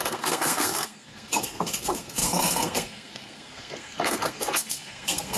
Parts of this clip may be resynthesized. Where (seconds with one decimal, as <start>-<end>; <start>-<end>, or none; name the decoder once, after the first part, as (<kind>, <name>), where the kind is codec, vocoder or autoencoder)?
0.0-5.4 (codec, SNAC)